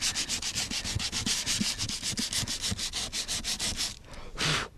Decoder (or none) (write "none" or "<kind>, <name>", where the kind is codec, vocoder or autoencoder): none